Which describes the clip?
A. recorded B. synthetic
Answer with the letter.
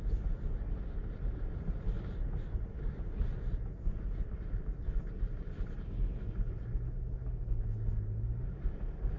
A